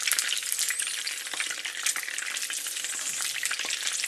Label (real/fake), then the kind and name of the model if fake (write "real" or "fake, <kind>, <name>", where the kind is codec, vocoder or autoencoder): real